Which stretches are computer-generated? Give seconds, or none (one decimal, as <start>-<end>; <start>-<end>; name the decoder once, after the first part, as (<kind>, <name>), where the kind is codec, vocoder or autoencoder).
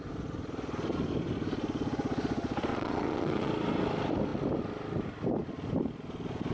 2.7-3.5 (vocoder, Vocos)